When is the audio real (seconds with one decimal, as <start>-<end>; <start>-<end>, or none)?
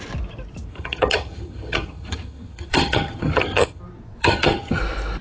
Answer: 0.0-0.7; 3.8-4.2; 4.8-5.2